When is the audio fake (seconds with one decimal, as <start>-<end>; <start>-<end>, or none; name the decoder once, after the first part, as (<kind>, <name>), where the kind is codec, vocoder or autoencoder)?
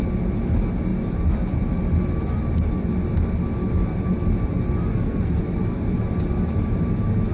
4.9-5.4 (codec, SNAC)